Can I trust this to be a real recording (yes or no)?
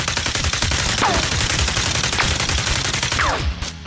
yes